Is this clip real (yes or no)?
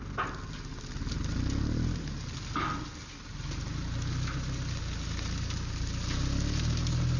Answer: yes